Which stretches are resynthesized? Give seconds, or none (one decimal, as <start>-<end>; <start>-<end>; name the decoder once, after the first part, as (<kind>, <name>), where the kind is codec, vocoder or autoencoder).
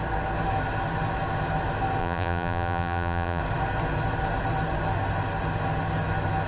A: 2.0-3.4 (vocoder, BigVGAN v2)